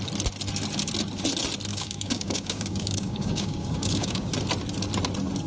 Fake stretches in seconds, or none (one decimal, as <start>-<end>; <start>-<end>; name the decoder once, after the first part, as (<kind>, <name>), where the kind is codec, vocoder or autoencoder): 1.7-4.3 (codec, DAC)